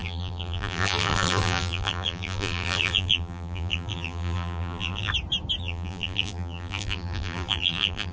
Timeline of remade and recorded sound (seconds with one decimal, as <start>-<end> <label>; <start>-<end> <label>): 0.0-5.1 remade; 5.1-5.6 recorded; 5.6-8.1 remade